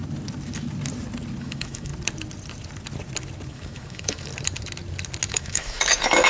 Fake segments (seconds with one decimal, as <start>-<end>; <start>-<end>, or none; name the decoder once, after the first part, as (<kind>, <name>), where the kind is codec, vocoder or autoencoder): 1.4-1.9 (autoencoder, DAC-VAE); 3.5-4.3; 5.3-6.3